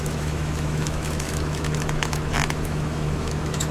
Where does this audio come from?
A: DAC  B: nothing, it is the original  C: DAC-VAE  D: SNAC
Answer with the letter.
C